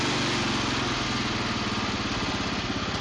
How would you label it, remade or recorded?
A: recorded